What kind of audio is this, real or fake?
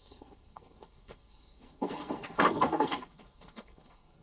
fake